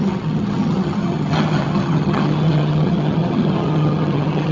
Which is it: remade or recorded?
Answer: remade